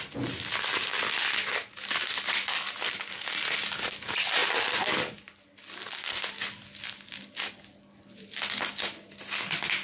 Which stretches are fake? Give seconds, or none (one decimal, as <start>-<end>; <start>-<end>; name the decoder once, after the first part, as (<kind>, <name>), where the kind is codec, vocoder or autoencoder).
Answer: none